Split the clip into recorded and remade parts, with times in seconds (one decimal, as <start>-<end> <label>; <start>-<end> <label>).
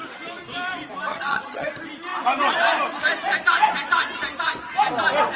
0.0-1.1 recorded; 1.1-1.7 remade; 1.7-5.4 recorded